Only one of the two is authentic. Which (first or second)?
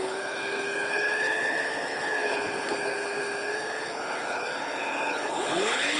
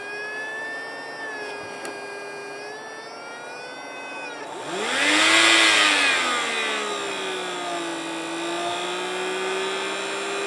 second